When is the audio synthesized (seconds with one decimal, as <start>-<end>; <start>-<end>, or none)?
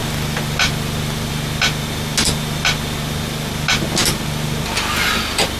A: none